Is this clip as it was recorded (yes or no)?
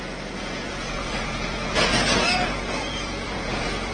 no